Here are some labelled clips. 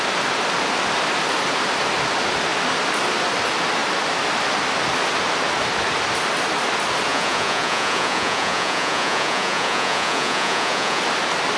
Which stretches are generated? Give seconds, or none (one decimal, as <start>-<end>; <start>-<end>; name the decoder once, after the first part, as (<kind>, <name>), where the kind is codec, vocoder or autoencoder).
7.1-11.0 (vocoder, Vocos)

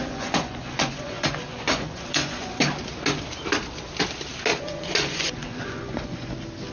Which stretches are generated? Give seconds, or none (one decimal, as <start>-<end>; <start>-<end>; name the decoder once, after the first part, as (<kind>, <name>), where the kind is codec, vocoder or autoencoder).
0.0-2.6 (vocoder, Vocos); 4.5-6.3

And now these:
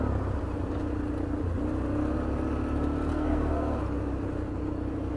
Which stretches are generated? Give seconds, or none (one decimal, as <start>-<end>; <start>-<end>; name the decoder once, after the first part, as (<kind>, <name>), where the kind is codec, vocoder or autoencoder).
3.1-3.8 (codec, SNAC)

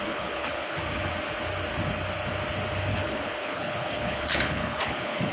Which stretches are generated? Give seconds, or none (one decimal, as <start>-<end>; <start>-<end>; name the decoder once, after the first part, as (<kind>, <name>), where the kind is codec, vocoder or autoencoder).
0.0-0.8 (codec, HILCodec); 2.9-5.3

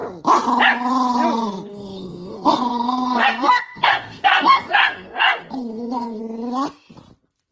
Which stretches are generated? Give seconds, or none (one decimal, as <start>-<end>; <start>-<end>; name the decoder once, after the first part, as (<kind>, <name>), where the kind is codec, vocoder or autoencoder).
1.7-6.2 (codec, SNAC)